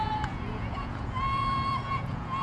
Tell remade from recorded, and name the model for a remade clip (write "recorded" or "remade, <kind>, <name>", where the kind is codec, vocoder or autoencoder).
remade, vocoder, Vocos